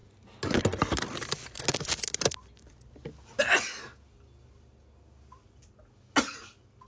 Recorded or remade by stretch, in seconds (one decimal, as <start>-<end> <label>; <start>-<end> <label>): 0.0-6.9 recorded